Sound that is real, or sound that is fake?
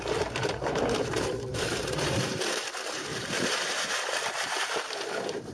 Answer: fake